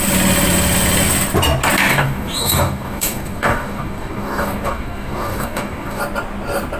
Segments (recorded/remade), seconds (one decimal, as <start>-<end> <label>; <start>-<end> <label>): 0.0-1.9 recorded; 1.9-6.0 remade; 6.0-6.8 recorded